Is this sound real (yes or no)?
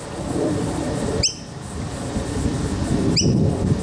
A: yes